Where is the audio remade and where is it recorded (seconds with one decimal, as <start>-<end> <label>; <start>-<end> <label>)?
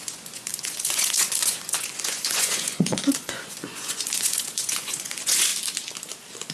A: 0.0-5.5 remade; 5.5-6.5 recorded